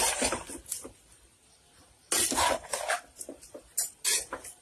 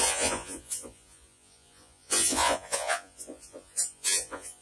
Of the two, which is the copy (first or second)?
second